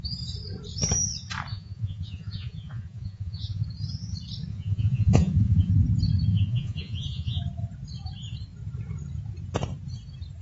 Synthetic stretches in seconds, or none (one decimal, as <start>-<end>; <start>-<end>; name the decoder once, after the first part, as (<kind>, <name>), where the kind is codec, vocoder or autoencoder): 1.5-3.6 (vocoder, Vocos); 4.5-5.7; 6.3-7.4